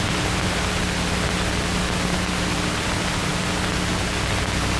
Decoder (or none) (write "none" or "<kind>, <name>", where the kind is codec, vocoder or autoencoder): none